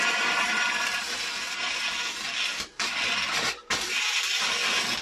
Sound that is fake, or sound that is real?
real